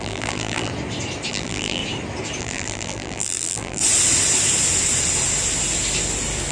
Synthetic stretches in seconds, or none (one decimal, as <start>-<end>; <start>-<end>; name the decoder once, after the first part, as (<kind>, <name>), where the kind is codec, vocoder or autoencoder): 0.0-0.7 (vocoder, BigVGAN v2); 1.3-1.8; 2.4-3.8